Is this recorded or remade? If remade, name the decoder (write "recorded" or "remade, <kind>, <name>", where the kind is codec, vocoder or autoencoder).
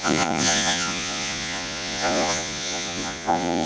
remade, vocoder, Vocos